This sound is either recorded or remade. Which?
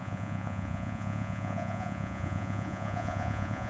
remade